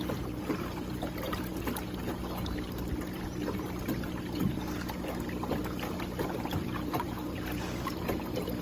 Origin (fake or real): real